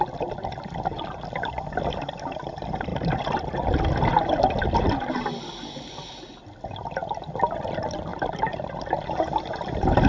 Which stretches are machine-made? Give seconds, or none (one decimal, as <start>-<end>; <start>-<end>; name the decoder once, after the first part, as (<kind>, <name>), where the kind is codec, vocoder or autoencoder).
none